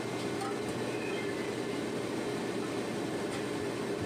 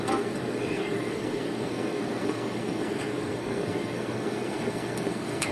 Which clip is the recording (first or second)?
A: first